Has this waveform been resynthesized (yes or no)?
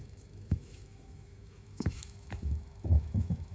yes